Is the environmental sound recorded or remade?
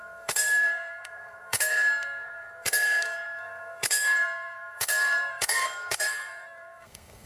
remade